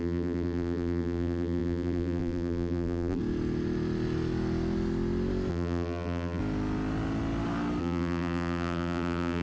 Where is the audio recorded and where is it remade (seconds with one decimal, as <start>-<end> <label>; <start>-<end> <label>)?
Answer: 0.0-3.2 remade; 3.2-5.5 recorded; 5.5-6.4 remade; 6.4-7.8 recorded; 7.8-9.4 remade